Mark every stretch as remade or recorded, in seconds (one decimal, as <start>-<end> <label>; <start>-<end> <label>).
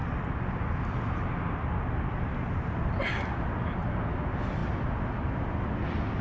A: 0.0-6.2 recorded